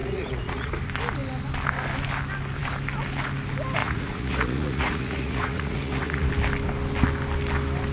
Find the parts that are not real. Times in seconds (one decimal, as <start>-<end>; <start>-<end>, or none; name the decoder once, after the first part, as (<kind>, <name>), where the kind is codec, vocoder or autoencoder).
0.0-0.7 (vocoder, Vocos); 3.8-6.3